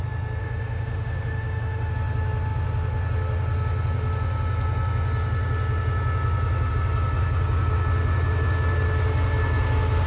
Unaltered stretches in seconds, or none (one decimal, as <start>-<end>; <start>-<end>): 0.0-0.4; 1.9-10.1